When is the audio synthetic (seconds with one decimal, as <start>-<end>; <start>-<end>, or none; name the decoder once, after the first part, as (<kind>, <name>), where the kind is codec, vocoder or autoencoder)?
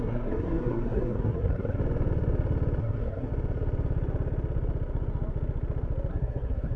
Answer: 0.0-1.8 (codec, SNAC); 2.8-3.3; 6.1-6.8